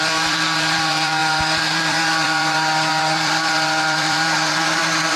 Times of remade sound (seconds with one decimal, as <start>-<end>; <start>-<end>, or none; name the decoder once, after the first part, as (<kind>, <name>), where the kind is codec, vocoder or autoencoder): 0.0-5.2 (vocoder, BigVGAN v2)

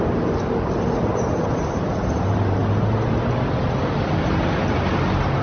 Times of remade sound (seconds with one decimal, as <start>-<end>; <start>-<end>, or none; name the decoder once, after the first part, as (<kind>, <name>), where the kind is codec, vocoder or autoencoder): none

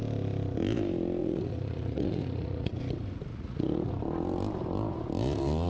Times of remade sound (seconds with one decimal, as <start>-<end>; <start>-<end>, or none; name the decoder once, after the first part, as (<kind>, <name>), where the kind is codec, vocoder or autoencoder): 1.2-2.8 (vocoder, Vocos); 3.3-3.9

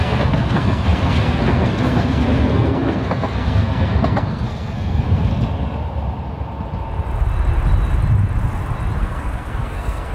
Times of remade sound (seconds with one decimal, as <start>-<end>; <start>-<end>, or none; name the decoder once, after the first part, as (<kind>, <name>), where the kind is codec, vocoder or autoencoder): 0.0-5.3 (codec, SNAC); 9.0-10.1